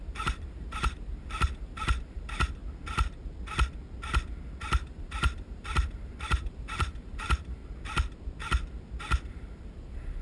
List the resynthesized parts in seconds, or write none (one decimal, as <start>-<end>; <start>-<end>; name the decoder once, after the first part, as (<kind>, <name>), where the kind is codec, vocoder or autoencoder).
0.0-2.6 (vocoder, BigVGAN v2); 4.6-7.6; 9.3-10.2

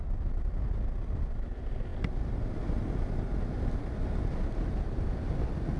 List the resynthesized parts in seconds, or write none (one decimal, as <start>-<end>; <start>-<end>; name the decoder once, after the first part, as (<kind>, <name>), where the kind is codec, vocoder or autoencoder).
none

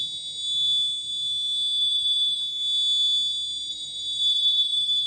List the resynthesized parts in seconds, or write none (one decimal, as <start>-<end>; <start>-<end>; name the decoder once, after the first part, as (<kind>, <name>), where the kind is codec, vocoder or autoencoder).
1.8-2.4 (vocoder, BigVGAN v2); 3.7-5.1

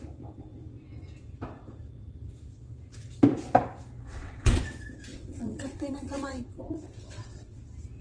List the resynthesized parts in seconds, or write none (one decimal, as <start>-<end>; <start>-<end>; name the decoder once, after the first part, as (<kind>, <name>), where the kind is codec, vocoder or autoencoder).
4.1-4.6 (vocoder, WaveNeXt); 5.1-7.6

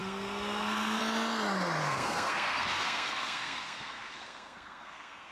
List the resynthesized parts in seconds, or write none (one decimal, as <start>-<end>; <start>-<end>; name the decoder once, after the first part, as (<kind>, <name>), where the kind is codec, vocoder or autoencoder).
0.0-1.0 (codec, SNAC); 1.8-5.3